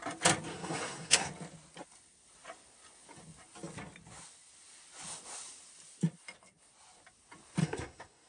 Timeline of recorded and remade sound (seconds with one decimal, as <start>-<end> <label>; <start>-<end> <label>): 0.0-0.5 recorded; 0.5-1.3 remade; 1.3-7.6 recorded; 7.6-8.3 remade